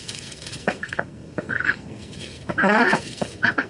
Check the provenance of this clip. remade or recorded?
remade